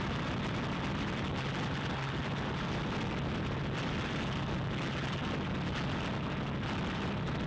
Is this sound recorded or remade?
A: recorded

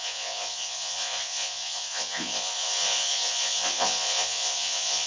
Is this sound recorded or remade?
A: remade